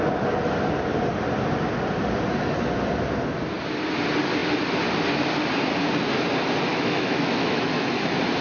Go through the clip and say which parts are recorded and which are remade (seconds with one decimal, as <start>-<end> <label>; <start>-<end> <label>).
0.0-6.7 recorded; 6.7-7.9 remade; 7.9-8.4 recorded